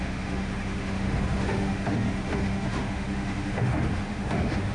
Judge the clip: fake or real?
fake